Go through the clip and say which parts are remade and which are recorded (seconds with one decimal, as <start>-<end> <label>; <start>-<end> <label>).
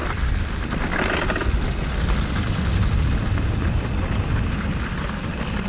0.0-5.7 recorded